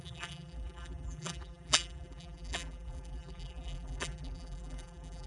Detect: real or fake fake